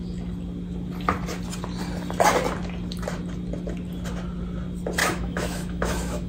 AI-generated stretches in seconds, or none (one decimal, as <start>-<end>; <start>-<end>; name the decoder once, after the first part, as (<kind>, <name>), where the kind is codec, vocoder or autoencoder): 5.0-6.3 (autoencoder, DAC-VAE)